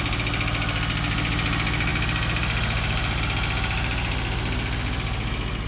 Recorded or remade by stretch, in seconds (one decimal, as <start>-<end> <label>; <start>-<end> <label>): 0.0-5.7 recorded